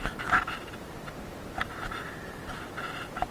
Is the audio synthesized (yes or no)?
no